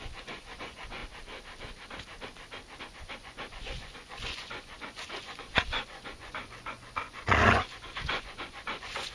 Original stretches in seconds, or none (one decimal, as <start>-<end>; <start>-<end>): 1.0-2.8